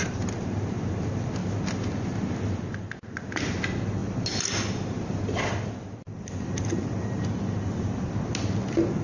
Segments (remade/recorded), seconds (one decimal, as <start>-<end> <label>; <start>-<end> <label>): 0.0-9.0 recorded